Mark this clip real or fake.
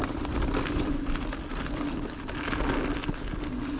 real